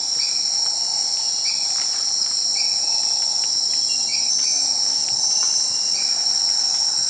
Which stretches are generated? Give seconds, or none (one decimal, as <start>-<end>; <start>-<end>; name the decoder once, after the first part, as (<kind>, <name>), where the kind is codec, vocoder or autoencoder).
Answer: none